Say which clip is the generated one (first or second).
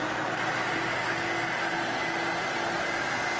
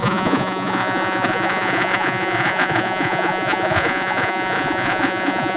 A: second